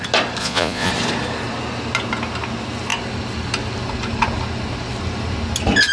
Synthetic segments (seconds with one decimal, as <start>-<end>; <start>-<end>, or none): 0.4-0.9